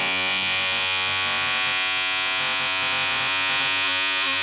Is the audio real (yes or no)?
no